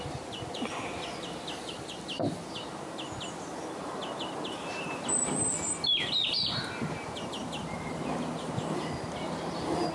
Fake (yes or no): no